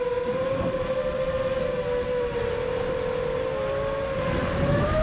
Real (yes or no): yes